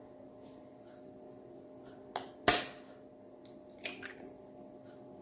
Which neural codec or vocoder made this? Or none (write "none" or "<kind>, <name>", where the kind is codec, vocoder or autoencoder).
none